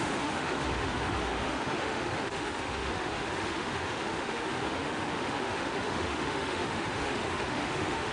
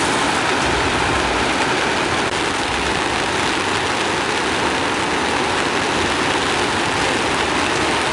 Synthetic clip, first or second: first